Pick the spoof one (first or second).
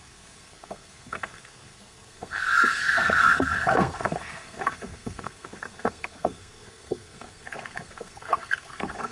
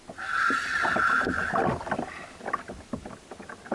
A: first